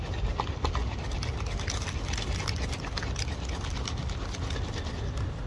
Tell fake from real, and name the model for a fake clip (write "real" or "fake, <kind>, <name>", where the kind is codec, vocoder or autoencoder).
real